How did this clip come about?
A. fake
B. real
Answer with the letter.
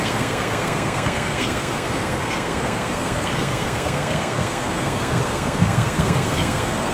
A